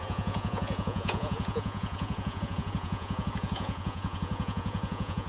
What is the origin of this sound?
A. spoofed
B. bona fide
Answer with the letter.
A